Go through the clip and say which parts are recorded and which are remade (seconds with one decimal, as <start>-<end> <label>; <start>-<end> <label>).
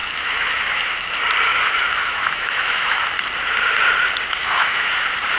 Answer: 0.0-1.1 remade; 1.1-1.5 recorded; 1.5-3.0 remade; 3.0-4.4 recorded; 4.4-4.9 remade; 4.9-5.4 recorded